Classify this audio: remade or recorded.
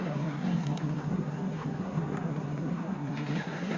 remade